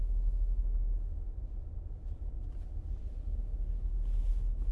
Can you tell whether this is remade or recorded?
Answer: recorded